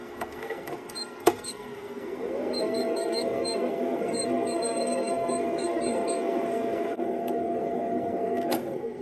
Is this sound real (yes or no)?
no